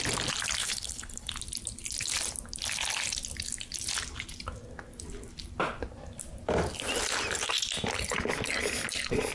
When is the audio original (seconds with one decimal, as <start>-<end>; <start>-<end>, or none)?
0.0-0.6; 1.3-9.3